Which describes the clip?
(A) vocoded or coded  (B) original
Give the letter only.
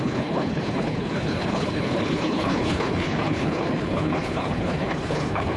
A